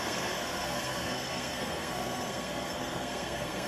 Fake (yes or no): yes